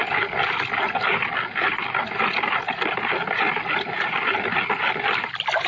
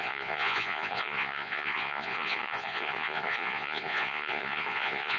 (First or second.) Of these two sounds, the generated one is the second